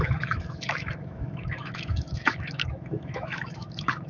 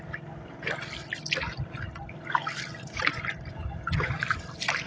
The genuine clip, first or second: second